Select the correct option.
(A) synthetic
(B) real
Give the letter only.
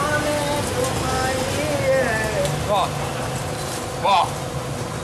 B